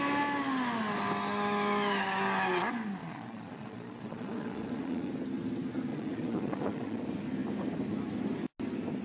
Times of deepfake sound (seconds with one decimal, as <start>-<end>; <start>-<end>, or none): 3.0-5.1; 5.9-7.0